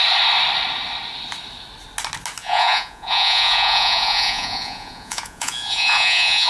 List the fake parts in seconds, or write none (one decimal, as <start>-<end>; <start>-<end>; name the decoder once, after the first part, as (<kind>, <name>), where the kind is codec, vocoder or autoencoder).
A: 2.4-6.5 (vocoder, Vocos)